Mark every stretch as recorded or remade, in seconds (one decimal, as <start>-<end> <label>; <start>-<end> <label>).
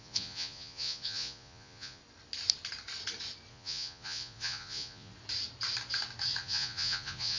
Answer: 0.0-2.0 remade; 2.0-3.5 recorded; 3.5-5.1 remade; 5.1-6.4 recorded; 6.4-7.4 remade